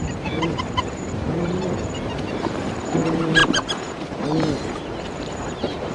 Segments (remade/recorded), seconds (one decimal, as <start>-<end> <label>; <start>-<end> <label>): 0.0-5.9 remade